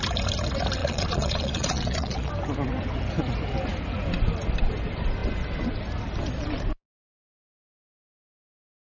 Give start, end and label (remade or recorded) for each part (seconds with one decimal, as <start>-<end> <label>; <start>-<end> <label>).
0.0-0.8 recorded; 0.8-2.3 remade; 2.3-9.0 recorded